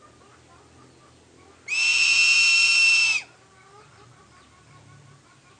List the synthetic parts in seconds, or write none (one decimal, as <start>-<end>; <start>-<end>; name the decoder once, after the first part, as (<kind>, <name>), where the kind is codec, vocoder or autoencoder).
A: none